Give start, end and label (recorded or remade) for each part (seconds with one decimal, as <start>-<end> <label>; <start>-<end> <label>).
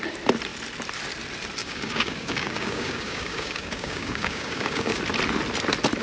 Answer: 0.0-1.6 recorded; 1.6-5.0 remade; 5.0-6.0 recorded